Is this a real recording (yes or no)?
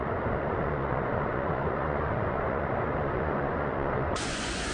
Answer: no